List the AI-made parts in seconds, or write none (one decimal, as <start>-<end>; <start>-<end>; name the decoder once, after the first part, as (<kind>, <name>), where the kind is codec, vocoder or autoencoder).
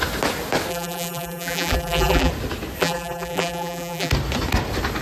0.7-2.3 (vocoder, BigVGAN v2); 2.8-4.1